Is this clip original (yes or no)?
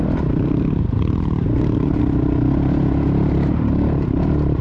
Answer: no